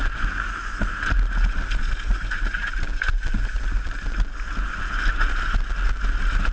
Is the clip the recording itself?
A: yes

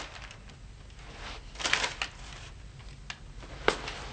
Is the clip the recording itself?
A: yes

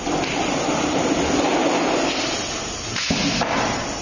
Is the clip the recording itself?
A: yes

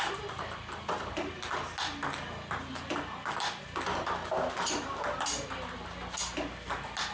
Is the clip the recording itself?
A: yes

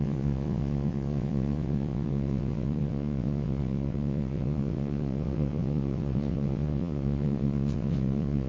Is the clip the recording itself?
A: no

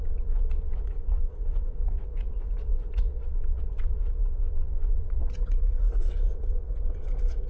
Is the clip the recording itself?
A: no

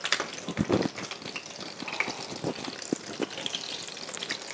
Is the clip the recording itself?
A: yes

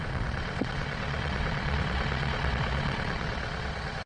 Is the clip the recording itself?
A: no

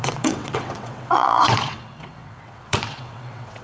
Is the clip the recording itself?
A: no